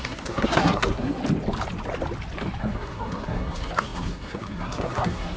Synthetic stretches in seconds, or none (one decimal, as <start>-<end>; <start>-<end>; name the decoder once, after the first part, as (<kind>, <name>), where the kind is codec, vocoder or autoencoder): 0.0-1.2 (codec, SNAC); 2.6-5.4